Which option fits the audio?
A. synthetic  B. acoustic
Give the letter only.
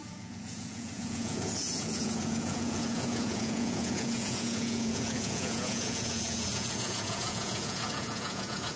A